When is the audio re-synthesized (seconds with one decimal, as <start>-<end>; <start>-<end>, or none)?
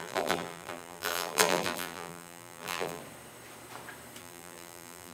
0.0-3.0; 4.2-5.1